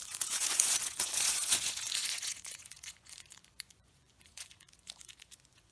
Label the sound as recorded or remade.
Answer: remade